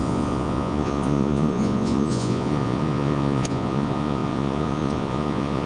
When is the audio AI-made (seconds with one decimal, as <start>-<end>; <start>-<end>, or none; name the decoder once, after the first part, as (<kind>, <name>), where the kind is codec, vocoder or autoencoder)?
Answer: 0.0-5.7 (vocoder, Vocos)